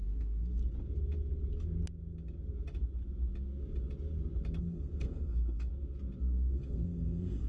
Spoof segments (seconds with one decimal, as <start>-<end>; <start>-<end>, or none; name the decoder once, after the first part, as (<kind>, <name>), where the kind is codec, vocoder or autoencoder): 0.0-0.6 (codec, SNAC); 4.6-5.7; 6.2-7.5